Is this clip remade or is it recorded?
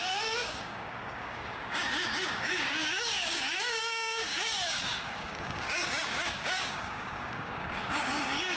remade